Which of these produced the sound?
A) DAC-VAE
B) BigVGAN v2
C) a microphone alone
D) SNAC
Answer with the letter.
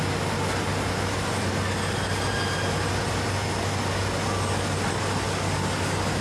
C